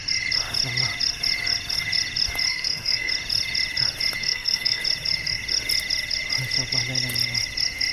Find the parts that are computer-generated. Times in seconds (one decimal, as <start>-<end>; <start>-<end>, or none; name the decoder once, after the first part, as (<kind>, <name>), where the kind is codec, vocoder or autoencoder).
2.5-3.1 (codec, SNAC); 4.2-4.8

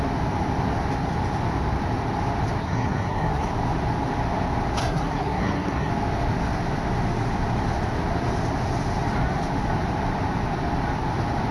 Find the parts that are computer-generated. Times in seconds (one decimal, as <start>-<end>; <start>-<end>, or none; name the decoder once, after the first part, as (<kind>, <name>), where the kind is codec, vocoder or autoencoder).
2.6-3.5 (codec, SNAC); 4.8-5.9